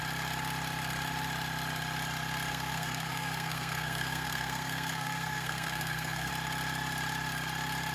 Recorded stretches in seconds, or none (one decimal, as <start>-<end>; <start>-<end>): 0.0-2.5; 6.3-7.9